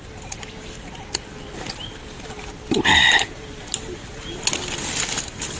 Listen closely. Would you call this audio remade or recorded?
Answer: recorded